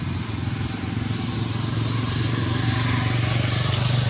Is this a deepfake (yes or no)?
no